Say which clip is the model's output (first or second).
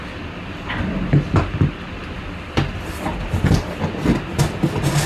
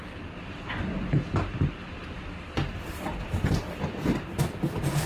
second